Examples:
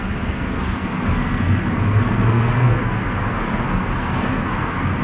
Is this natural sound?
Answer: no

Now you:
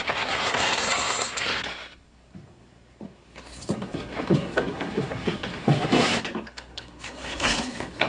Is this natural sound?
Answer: no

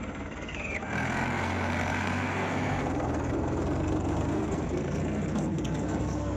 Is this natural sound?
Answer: no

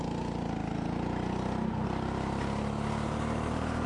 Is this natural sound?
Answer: yes